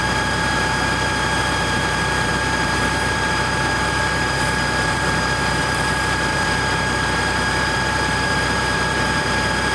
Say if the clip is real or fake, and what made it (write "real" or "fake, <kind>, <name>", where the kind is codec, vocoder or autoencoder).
fake, vocoder, BigVGAN v2